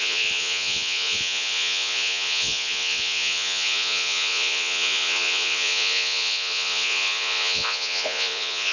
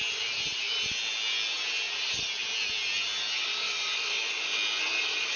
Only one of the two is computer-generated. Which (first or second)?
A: first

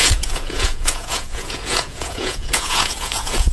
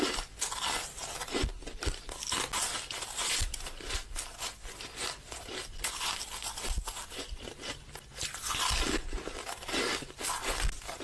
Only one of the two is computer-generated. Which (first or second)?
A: first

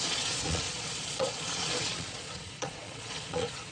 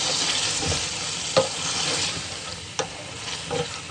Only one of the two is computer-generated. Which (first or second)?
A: first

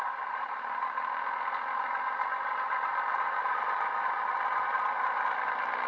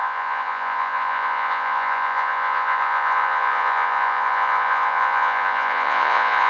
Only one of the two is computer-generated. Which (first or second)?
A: second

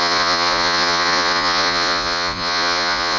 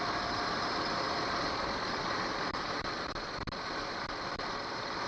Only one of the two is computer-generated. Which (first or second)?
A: first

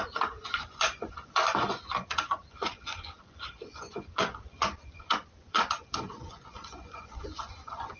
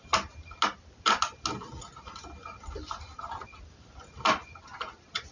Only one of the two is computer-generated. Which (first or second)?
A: first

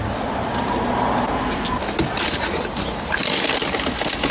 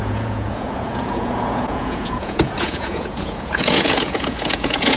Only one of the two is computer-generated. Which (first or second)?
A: second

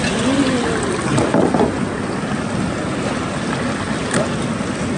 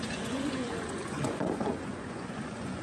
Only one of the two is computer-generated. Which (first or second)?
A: second